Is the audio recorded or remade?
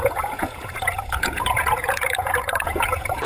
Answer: remade